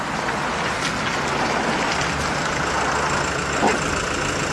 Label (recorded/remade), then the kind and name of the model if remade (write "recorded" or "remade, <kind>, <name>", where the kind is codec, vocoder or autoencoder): recorded